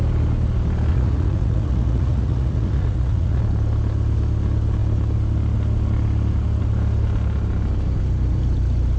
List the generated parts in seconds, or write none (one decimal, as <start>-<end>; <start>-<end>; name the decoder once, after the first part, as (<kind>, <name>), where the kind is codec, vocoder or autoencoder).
0.9-3.4 (vocoder, Vocos)